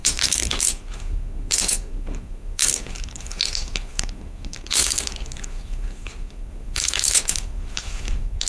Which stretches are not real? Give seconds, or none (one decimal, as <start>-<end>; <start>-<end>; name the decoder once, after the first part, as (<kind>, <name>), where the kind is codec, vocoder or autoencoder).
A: 0.0-8.5 (codec, SNAC)